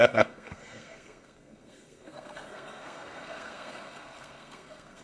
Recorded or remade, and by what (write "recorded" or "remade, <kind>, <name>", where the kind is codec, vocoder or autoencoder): remade, codec, SNAC